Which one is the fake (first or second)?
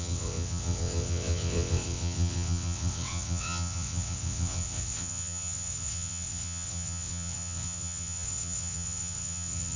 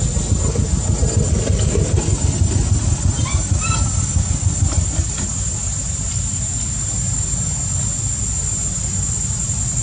first